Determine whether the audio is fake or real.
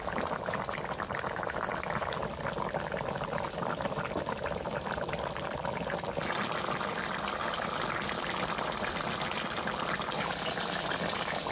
fake